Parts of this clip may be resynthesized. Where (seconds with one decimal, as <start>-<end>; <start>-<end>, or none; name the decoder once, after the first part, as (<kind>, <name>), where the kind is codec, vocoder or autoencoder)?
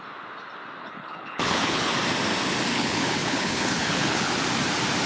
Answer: 0.8-1.9 (codec, HILCodec); 2.7-4.3